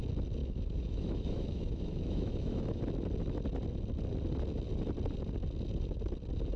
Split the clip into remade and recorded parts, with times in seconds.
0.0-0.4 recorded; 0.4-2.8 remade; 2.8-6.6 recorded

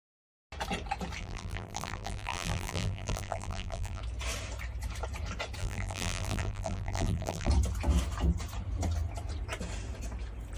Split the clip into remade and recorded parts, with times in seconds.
0.0-1.2 recorded; 1.2-4.0 remade; 4.0-5.6 recorded; 5.6-7.5 remade; 7.5-10.6 recorded

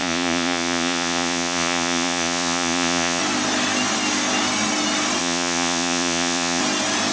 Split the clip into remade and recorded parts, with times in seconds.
0.0-3.2 remade; 3.2-5.2 recorded; 5.2-6.6 remade; 6.6-7.1 recorded